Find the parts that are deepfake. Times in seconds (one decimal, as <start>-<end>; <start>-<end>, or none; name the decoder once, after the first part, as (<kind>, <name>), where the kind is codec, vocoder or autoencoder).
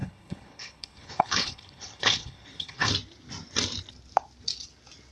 0.0-2.9 (codec, HILCodec)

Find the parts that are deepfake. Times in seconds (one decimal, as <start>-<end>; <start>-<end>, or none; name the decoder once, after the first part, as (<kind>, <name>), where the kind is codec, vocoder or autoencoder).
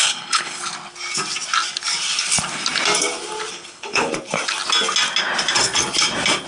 0.0-0.6 (codec, HILCodec); 3.5-4.1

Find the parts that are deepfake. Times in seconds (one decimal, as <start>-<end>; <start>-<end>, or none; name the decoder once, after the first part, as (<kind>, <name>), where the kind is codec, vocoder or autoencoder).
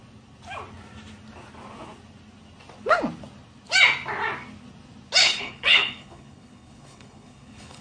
5.2-7.8 (codec, HILCodec)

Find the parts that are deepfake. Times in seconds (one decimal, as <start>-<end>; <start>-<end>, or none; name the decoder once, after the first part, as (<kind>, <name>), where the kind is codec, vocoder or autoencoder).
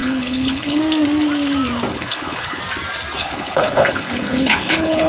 0.0-0.8 (codec, HILCodec); 1.9-2.6; 3.2-5.1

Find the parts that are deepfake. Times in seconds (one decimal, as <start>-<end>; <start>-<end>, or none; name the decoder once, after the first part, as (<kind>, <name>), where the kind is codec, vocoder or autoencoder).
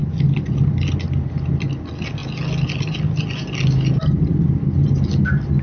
none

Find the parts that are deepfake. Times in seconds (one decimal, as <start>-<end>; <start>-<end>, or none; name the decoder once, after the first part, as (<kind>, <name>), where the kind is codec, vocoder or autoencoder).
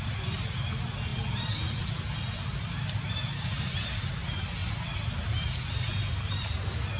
none